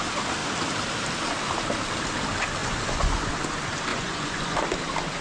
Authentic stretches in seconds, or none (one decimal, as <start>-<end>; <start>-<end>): 0.0-2.6; 3.3-3.9; 4.6-5.2